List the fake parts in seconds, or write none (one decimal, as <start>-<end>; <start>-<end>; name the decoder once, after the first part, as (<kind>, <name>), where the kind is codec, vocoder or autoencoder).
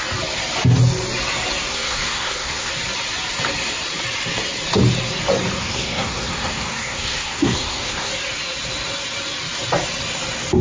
1.7-2.7 (codec, SNAC); 5.6-8.1